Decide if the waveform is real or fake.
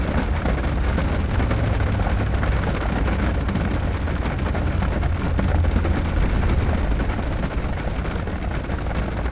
real